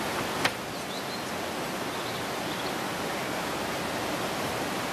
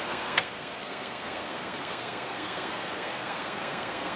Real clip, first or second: first